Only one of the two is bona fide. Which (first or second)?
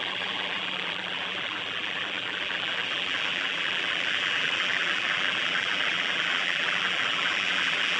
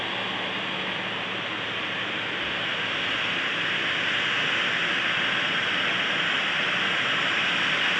second